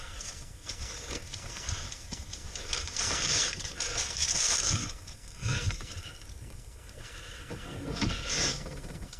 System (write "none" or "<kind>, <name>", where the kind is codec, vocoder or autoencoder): codec, SNAC